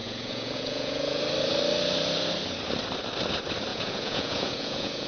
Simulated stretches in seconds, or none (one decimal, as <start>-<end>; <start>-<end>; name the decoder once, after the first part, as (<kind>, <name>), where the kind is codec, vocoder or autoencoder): 0.0-1.2 (vocoder, Vocos); 3.7-5.1